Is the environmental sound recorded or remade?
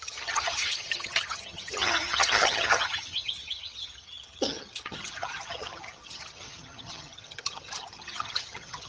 remade